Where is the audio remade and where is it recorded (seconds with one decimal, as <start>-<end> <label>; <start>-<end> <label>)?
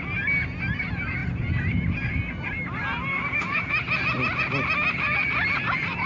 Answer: 0.0-3.1 recorded; 3.1-3.7 remade; 3.7-6.1 recorded